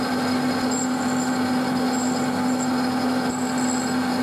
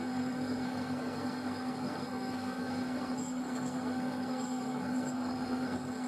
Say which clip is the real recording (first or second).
first